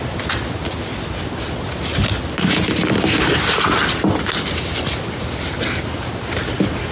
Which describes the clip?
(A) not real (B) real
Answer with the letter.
B